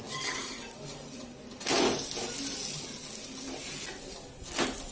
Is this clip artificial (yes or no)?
no